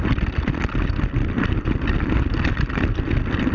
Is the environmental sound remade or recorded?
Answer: recorded